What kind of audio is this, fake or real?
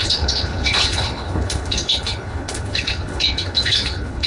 fake